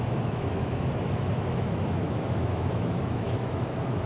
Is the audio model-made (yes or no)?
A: yes